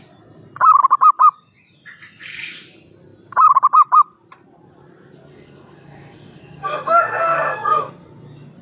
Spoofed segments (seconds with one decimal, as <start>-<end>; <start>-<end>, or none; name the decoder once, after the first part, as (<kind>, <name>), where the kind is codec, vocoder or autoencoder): 5.3-7.9 (codec, SNAC)